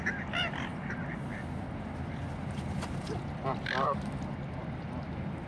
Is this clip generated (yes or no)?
yes